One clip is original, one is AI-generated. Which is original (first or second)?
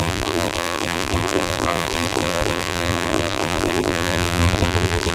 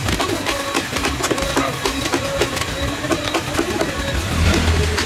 second